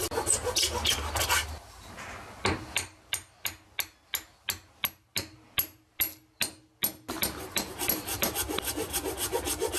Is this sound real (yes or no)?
yes